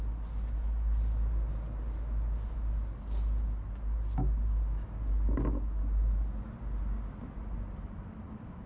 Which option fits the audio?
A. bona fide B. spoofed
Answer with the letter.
A